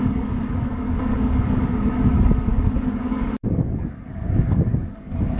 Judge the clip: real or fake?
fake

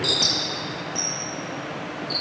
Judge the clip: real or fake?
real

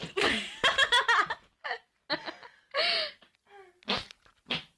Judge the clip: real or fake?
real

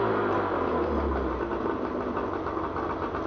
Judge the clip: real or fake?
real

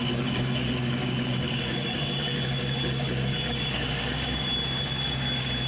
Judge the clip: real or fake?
fake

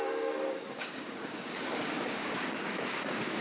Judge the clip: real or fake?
fake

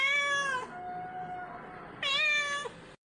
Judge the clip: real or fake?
real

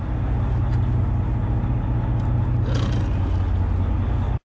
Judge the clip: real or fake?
real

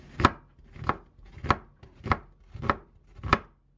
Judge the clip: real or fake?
real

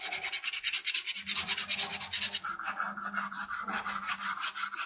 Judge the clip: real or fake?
real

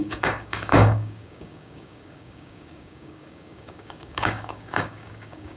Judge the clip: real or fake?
fake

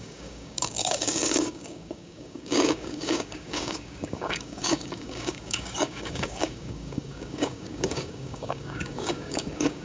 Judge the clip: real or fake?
fake